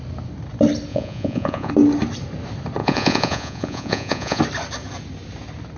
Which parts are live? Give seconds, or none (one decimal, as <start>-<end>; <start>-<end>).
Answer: 0.0-0.9; 1.7-2.8; 4.4-5.8